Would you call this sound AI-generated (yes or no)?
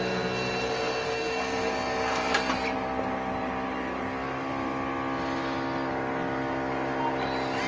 no